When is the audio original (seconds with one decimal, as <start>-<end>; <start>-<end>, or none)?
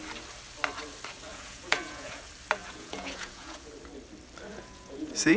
0.0-1.3; 2.2-2.6; 3.7-4.5